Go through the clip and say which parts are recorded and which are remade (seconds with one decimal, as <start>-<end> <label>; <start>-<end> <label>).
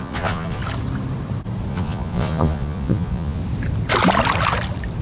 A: 0.0-0.6 remade; 0.6-1.7 recorded; 1.7-3.4 remade; 3.4-5.0 recorded